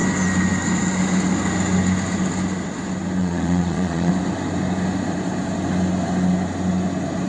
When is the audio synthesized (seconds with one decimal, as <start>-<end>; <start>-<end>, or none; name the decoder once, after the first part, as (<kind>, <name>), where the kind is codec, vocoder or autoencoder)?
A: 3.2-4.1 (vocoder, Vocos)

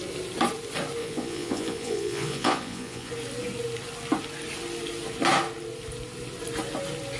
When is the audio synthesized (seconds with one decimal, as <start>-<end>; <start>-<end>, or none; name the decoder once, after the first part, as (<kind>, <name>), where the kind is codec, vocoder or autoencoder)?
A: 1.0-3.1 (vocoder, Vocos)

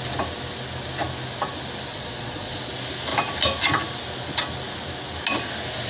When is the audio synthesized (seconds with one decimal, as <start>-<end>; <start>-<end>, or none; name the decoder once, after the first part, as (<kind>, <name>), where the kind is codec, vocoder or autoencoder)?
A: 1.9-2.6 (vocoder, Vocos)

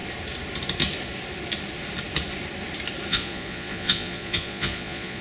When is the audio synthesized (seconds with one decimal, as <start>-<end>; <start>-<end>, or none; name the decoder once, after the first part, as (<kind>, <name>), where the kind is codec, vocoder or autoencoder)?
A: 3.1-5.2 (vocoder, Vocos)

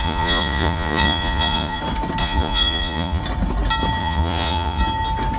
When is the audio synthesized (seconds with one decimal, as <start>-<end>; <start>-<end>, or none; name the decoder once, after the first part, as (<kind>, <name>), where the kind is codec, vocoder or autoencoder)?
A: 0.0-1.8 (vocoder, Vocos); 2.2-3.2; 4.0-4.8

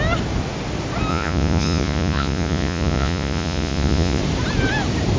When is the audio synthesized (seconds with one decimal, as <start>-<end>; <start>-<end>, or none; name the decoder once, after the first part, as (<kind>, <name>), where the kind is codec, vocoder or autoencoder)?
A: 1.1-4.2 (vocoder, Vocos)

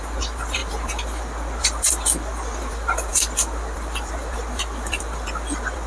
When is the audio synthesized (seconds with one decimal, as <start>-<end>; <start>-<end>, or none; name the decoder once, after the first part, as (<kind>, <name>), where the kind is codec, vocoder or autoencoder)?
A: none